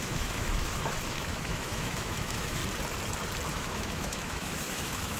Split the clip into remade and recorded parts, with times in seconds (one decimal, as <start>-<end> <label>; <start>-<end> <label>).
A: 0.0-2.6 remade; 2.6-3.5 recorded; 3.5-5.2 remade